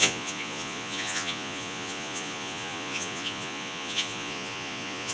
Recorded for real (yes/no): no